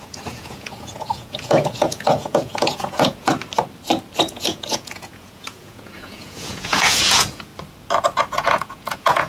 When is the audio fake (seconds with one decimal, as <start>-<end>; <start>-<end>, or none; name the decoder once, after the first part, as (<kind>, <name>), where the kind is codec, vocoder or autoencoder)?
0.0-3.3 (vocoder, Vocos); 4.2-7.5; 8.3-9.3

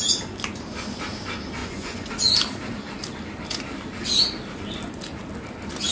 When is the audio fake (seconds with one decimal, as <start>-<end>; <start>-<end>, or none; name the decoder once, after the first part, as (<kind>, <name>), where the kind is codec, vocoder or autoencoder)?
1.6-2.1 (vocoder, Vocos)

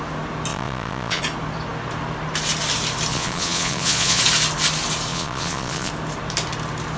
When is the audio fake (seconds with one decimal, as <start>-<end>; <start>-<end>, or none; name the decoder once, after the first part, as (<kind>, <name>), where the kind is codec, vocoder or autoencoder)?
0.5-1.2 (vocoder, Vocos); 3.1-4.2; 5.1-5.9

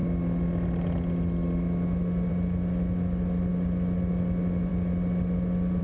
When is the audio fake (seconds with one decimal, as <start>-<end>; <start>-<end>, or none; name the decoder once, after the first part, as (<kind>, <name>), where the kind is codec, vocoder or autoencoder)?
none

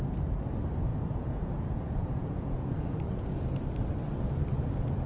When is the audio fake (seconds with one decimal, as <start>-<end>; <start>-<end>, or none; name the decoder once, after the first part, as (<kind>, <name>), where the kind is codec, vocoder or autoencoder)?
0.9-3.5 (vocoder, Vocos)

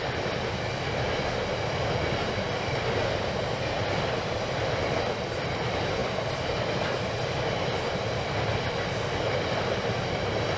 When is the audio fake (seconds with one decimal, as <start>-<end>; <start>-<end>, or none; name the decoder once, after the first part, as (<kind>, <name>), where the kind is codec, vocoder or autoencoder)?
none